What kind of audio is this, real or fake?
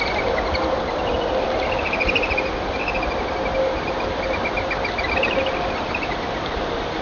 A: real